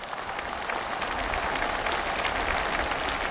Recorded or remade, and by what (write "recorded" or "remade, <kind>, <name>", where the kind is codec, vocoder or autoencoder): recorded